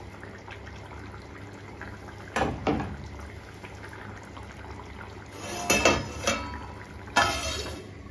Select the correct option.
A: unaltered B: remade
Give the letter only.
A